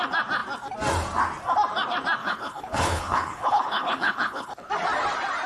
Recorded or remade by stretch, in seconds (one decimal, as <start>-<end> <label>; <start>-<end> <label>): 0.0-2.2 recorded; 2.2-4.7 remade; 4.7-5.5 recorded